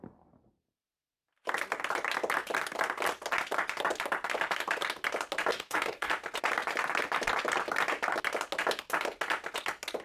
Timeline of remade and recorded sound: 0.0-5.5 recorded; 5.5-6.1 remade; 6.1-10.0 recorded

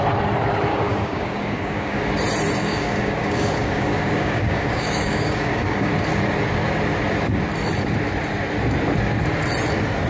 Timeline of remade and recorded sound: 0.0-0.7 recorded; 0.7-2.0 remade; 2.0-2.6 recorded; 2.6-5.9 remade; 5.9-10.1 recorded

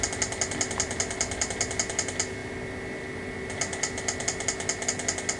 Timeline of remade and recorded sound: 0.0-5.4 recorded